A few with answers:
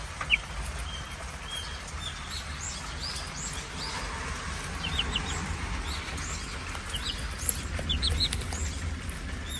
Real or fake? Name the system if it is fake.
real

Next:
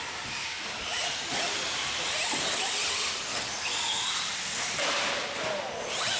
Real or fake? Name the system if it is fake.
real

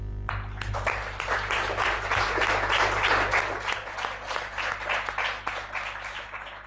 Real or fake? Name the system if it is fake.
real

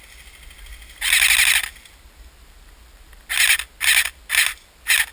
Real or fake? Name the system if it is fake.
real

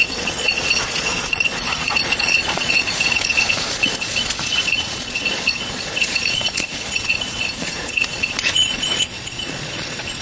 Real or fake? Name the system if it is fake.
fake, vocoder, Vocos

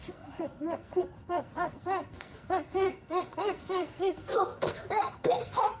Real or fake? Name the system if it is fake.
fake, codec, SNAC